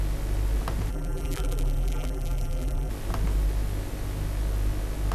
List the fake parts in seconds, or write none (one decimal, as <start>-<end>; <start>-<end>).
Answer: 0.9-2.9